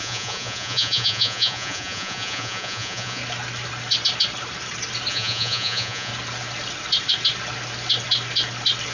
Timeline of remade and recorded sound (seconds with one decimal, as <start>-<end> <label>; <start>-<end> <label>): 0.0-3.2 remade; 3.2-5.1 recorded; 5.1-6.1 remade; 6.1-8.9 recorded